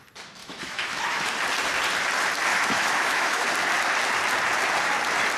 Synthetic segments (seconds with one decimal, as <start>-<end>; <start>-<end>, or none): 0.4-1.2; 2.5-3.5